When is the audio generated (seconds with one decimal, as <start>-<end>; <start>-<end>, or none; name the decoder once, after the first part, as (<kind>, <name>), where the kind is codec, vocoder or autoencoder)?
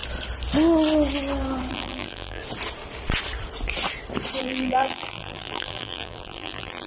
1.7-2.4 (vocoder, BigVGAN v2); 4.4-6.9